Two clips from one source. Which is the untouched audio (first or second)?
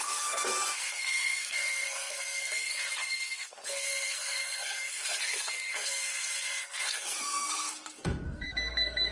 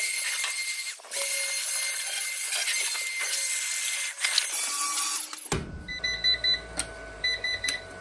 second